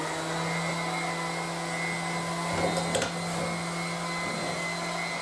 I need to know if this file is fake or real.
real